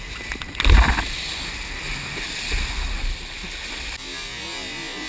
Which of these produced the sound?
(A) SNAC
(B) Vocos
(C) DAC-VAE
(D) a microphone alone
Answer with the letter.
D